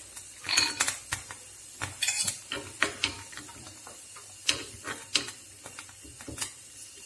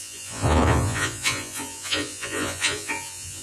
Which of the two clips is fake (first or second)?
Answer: second